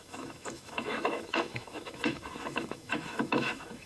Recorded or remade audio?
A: remade